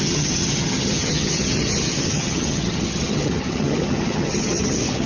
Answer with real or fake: fake